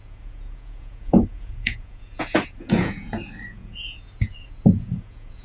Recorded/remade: remade